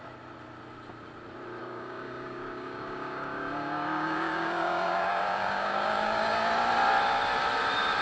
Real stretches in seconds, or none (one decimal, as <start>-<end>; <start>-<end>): 0.0-1.6; 6.4-8.0